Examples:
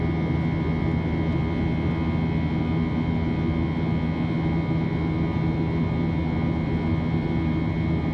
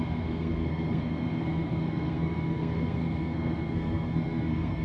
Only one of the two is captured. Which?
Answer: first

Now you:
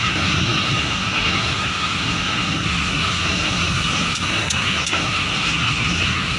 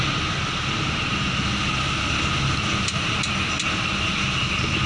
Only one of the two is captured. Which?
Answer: second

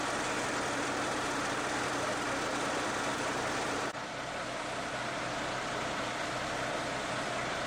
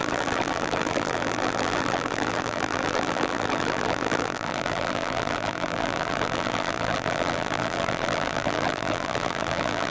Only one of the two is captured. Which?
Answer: first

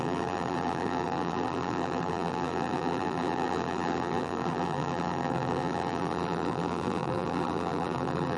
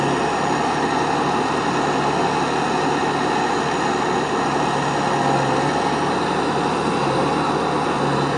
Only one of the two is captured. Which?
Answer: second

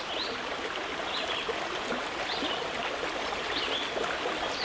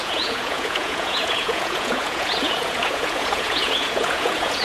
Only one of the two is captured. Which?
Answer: first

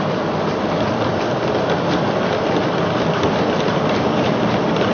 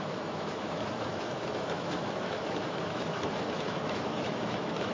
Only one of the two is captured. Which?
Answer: first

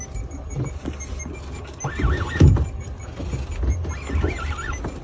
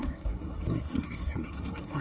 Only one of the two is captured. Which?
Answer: first